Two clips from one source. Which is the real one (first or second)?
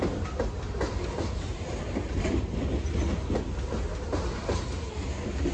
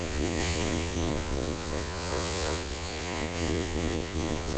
first